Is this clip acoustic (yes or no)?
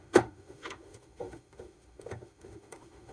no